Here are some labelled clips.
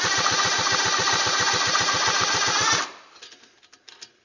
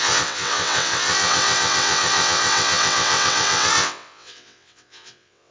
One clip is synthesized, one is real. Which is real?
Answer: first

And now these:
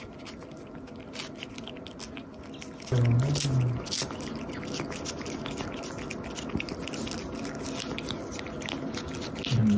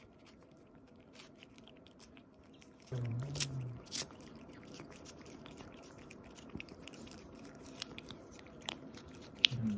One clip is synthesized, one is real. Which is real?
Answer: first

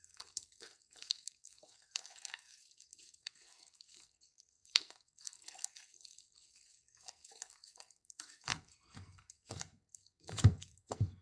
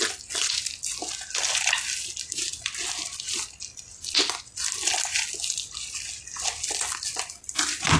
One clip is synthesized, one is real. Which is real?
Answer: second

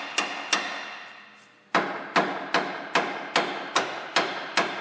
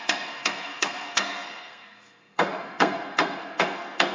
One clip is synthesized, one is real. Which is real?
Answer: first